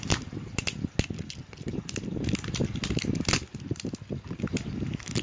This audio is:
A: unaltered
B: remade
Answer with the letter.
A